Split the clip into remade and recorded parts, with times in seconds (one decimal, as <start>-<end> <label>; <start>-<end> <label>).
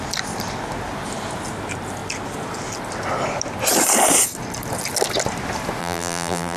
0.0-5.8 recorded; 5.8-6.6 remade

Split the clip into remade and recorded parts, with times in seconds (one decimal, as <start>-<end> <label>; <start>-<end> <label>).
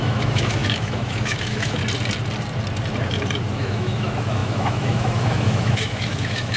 0.0-1.8 remade; 1.8-3.5 recorded; 3.5-6.6 remade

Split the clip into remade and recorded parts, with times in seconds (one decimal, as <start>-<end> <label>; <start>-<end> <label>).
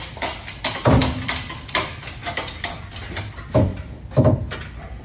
0.0-1.0 recorded; 1.0-1.5 remade; 1.5-2.2 recorded; 2.2-2.9 remade; 2.9-3.7 recorded; 3.7-5.0 remade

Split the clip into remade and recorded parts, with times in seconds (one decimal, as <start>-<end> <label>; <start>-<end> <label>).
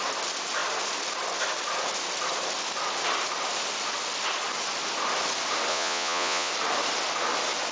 0.0-5.7 recorded; 5.7-6.5 remade; 6.5-7.7 recorded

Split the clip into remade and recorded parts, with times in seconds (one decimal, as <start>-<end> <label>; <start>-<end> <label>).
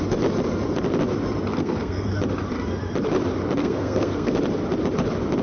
0.0-1.5 recorded; 1.5-2.1 remade; 2.1-3.6 recorded; 3.6-4.4 remade; 4.4-5.4 recorded